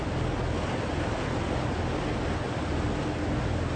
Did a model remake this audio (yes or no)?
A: no